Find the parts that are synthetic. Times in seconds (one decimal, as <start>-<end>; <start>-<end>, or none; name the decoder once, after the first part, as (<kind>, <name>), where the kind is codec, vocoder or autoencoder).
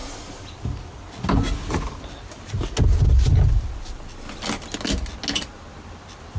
none